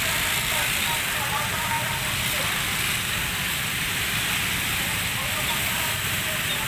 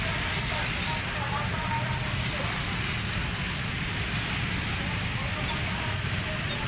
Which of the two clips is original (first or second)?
second